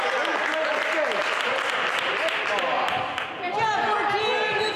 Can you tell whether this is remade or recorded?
recorded